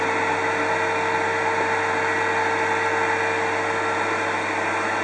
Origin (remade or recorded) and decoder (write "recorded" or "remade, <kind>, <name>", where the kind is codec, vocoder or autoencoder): recorded